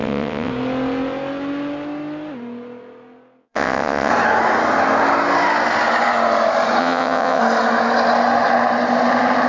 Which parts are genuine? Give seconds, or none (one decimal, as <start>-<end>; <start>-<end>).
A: 0.5-3.4; 4.1-6.8; 7.4-9.5